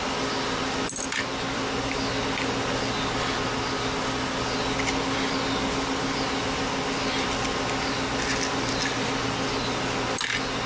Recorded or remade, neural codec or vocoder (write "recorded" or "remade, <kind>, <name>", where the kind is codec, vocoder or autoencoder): recorded